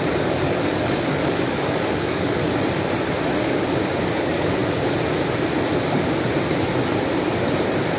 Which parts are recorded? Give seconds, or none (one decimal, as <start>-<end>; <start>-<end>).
2.4-3.4; 4.6-8.0